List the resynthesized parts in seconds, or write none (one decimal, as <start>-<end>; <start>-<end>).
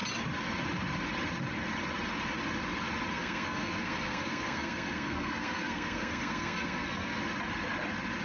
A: 3.1-7.2